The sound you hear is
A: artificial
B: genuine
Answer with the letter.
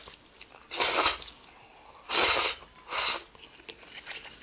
B